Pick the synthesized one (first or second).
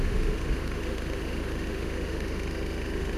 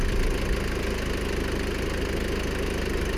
first